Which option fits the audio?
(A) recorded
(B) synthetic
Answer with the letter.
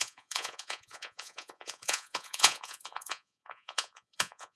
B